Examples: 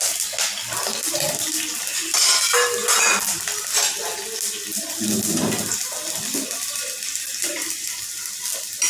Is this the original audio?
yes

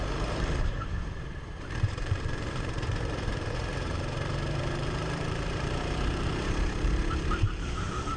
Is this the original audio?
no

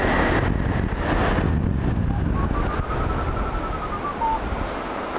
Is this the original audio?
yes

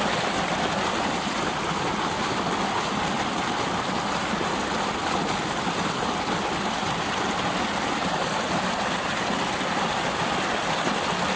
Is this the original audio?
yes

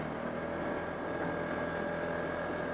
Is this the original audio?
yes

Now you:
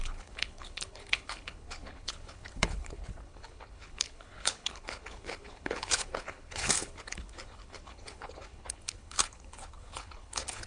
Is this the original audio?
no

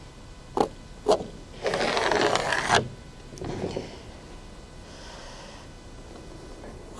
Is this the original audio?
yes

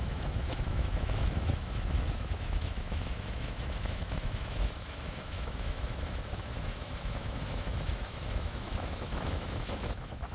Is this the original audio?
no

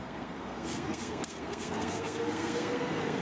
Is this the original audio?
no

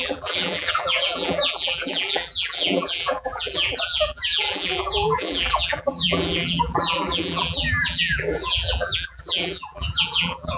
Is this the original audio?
no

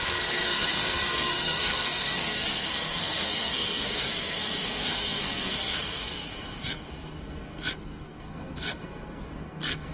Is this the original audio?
no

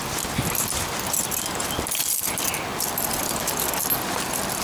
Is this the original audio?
yes